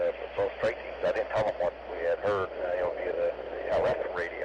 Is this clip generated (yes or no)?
no